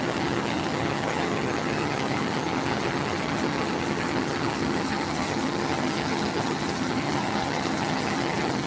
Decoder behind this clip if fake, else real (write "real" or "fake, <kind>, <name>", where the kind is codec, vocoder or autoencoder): fake, vocoder, HiFi-GAN